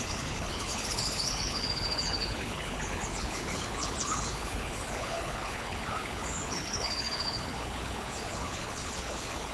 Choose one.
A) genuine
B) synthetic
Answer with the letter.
B